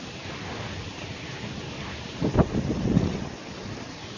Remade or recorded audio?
recorded